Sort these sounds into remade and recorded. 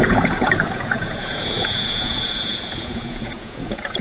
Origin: remade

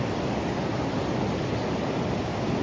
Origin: recorded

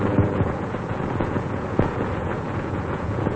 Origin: remade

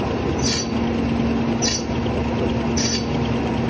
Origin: recorded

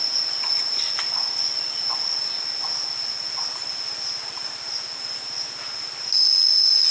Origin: recorded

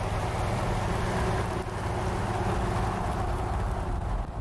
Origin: recorded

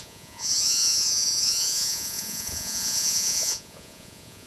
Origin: remade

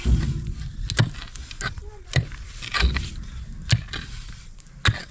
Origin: recorded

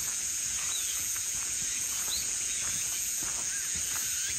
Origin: remade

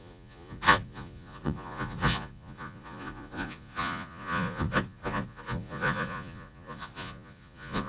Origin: remade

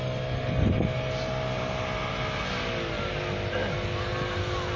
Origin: recorded